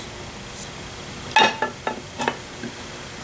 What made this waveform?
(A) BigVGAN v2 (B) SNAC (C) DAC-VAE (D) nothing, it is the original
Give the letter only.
D